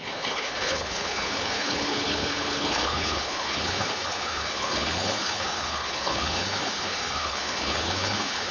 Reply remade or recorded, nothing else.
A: remade